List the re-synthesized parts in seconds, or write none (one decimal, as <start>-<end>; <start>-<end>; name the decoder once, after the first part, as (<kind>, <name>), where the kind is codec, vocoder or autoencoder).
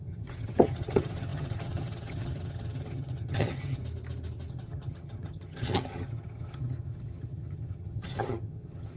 0.0-3.8 (vocoder, HiFi-GAN); 4.5-9.0